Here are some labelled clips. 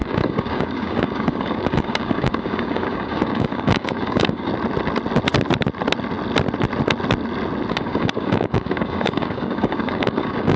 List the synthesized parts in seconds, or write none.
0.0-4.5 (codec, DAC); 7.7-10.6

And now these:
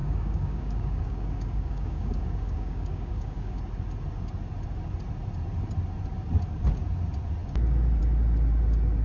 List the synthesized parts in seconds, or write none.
0.0-3.6 (codec, DAC)